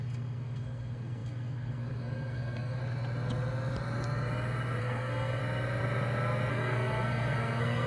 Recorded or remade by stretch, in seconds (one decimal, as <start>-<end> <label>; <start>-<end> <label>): 0.0-2.8 remade; 2.8-4.8 recorded; 4.8-5.4 remade; 5.4-6.5 recorded; 6.5-7.9 remade